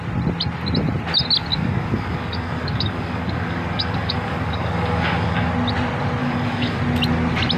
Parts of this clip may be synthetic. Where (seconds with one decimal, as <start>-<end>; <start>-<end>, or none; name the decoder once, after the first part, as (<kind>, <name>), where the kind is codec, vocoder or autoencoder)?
1.5-5.5 (codec, DAC); 6.2-6.8